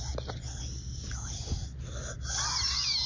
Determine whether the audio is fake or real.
real